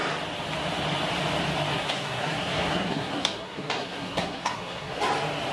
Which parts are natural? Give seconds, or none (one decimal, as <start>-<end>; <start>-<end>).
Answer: 0.0-1.7; 5.0-5.5